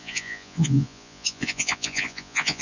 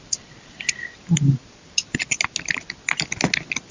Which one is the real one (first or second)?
second